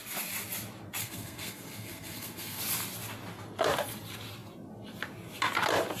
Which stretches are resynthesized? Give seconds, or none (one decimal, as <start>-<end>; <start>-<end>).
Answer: 1.0-2.6